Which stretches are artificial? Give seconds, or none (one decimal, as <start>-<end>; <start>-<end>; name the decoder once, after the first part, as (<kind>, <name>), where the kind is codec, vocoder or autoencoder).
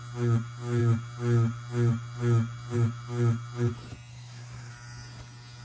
4.1-4.7 (codec, SNAC)